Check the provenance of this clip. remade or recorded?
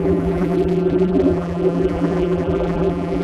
remade